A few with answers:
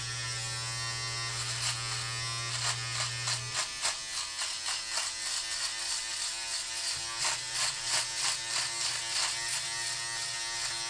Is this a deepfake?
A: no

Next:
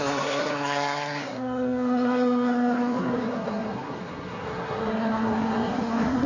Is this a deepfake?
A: yes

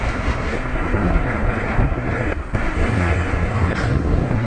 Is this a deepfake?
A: yes